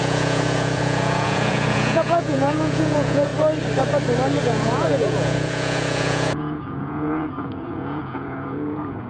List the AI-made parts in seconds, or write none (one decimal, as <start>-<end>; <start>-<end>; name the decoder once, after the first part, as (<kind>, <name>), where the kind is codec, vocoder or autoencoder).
0.0-3.3 (vocoder, Vocos); 4.4-9.1